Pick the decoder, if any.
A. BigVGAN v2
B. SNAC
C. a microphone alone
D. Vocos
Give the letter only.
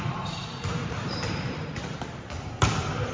A